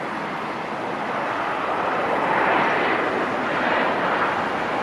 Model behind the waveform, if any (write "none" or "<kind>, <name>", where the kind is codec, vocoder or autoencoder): none